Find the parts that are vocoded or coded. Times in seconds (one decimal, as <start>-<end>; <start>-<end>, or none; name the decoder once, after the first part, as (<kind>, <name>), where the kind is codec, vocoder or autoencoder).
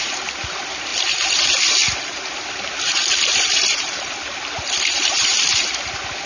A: 0.9-1.4 (vocoder, BigVGAN v2); 1.8-5.6